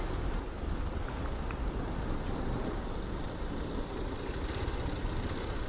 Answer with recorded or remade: recorded